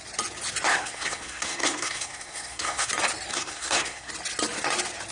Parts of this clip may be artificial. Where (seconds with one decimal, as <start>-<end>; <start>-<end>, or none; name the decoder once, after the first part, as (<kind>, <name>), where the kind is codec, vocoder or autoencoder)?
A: 0.7-2.9 (codec, SNAC); 3.3-4.1